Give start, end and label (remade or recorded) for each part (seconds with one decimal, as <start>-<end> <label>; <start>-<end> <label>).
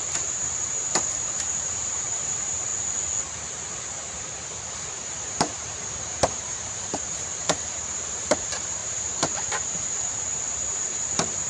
0.0-2.7 remade; 2.7-4.7 recorded; 4.7-11.5 remade